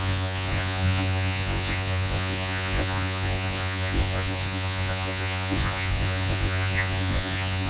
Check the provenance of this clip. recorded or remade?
remade